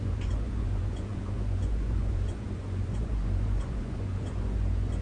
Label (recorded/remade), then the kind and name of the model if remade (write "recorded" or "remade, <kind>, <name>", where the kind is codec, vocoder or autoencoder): remade, vocoder, Vocos